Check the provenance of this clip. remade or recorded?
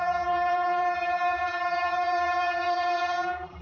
remade